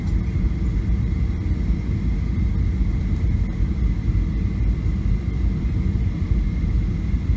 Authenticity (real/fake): real